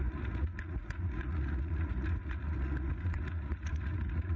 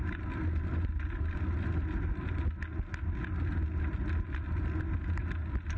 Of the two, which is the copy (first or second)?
first